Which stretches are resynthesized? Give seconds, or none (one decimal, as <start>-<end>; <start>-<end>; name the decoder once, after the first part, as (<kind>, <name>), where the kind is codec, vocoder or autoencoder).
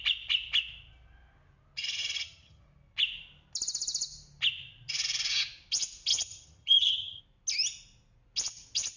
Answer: 1.8-2.6 (vocoder, HiFi-GAN); 6.1-7.2